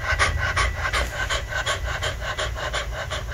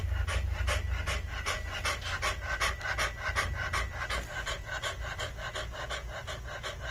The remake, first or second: first